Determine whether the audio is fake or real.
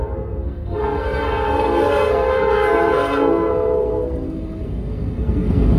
fake